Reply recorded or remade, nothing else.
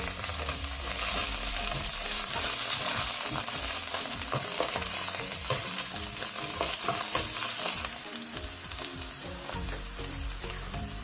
remade